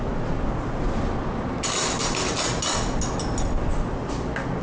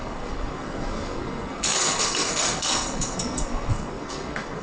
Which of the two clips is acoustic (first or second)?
first